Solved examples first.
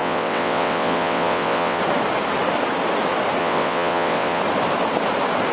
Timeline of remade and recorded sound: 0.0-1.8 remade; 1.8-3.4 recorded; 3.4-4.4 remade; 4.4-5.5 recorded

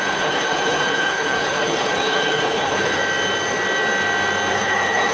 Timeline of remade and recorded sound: 0.0-3.0 remade; 3.0-4.5 recorded; 4.5-5.1 remade

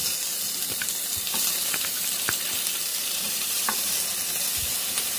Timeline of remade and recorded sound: 0.0-2.9 recorded; 2.9-3.9 remade; 3.9-5.2 recorded

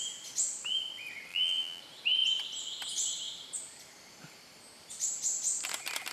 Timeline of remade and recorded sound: 0.0-1.3 recorded; 1.3-1.8 remade; 1.8-6.1 recorded

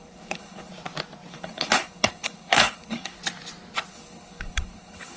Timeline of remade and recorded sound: 0.0-0.7 remade; 0.7-1.3 recorded; 1.3-3.2 remade; 3.2-3.9 recorded; 3.9-5.2 remade